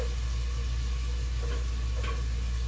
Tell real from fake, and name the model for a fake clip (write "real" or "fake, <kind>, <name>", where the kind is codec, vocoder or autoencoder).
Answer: real